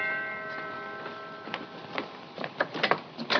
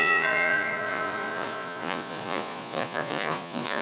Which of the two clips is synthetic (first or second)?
second